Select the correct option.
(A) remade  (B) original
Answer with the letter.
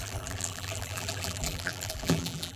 A